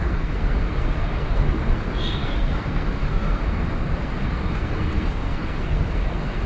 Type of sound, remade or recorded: remade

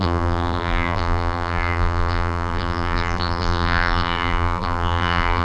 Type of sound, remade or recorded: remade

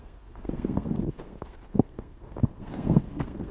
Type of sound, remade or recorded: remade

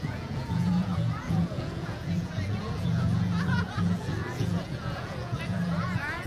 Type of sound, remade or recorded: remade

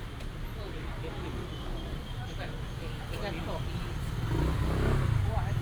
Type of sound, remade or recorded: recorded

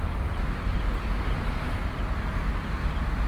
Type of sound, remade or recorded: recorded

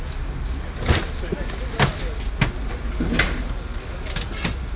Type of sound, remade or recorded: recorded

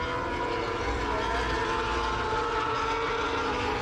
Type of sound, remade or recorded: recorded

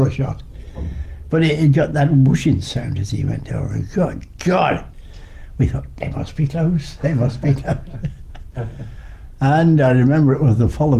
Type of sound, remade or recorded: recorded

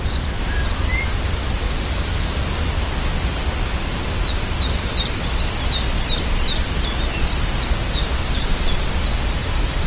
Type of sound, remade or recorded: recorded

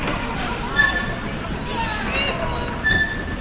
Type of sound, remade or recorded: recorded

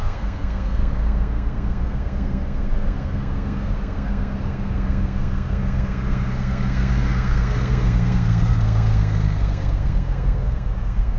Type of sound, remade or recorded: remade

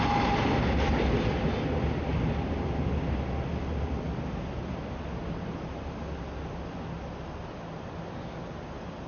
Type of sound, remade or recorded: recorded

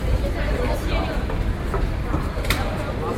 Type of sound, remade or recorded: recorded